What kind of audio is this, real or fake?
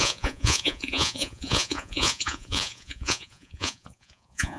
fake